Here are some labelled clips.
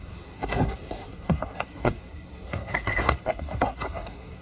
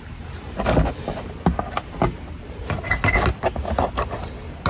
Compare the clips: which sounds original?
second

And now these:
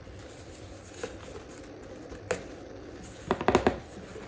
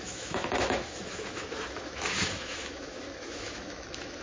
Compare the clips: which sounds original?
first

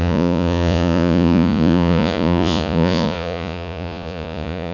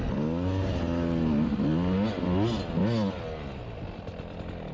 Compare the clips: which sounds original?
second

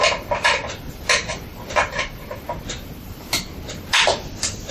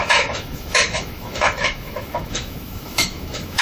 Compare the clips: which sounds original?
first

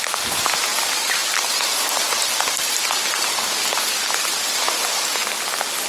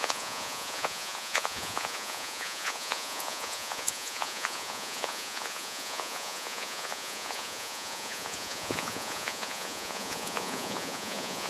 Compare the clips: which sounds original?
first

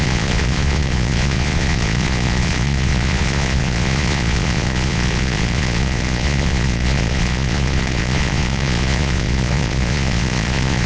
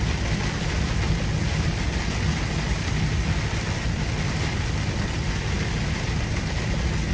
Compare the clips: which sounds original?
second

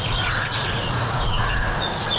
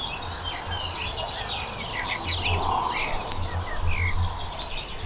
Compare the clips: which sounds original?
second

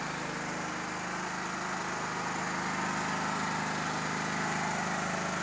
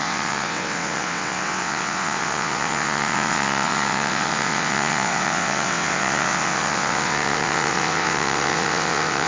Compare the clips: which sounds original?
first